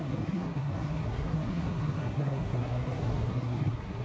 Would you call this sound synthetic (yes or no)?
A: yes